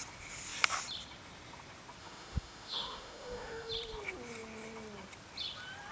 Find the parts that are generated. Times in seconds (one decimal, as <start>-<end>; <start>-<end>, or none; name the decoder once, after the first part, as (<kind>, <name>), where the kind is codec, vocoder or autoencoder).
2.0-3.7 (autoencoder, DAC-VAE)